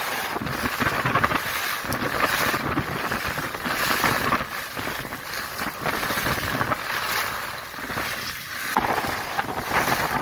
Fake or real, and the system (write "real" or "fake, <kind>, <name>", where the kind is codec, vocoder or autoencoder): real